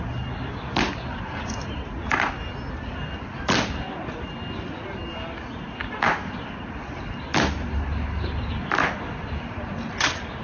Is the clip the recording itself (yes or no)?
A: yes